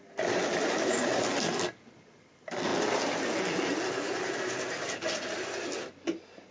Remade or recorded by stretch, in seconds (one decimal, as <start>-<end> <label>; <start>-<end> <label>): 0.0-6.5 recorded